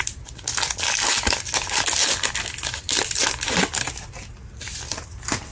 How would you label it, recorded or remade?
recorded